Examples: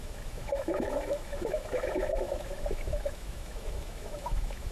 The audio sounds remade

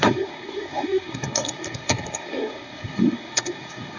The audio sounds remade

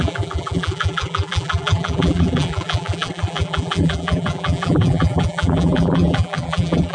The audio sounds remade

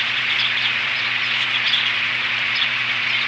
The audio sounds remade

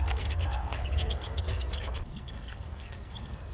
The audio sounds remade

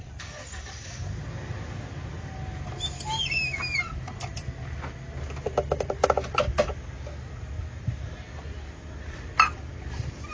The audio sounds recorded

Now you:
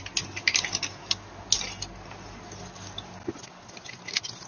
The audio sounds recorded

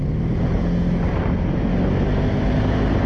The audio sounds recorded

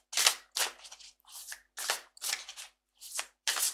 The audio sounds recorded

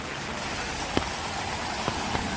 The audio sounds recorded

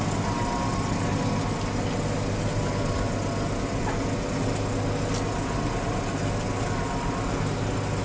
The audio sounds recorded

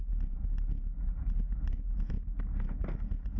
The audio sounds recorded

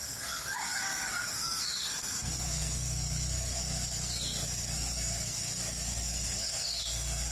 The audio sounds remade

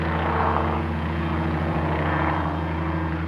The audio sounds remade